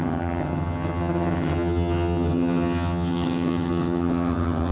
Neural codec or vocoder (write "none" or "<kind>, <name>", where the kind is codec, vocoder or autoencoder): vocoder, HiFi-GAN